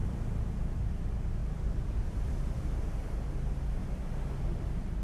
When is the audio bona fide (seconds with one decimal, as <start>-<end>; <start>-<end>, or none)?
0.6-1.4; 3.1-5.0